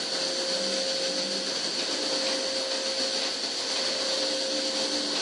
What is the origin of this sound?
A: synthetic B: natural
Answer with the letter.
B